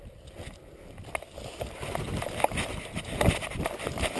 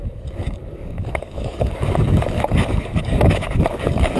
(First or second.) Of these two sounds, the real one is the first